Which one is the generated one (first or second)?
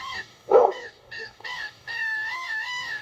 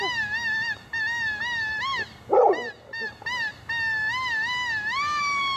first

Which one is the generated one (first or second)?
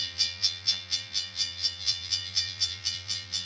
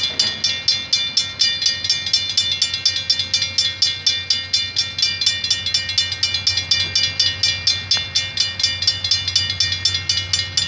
first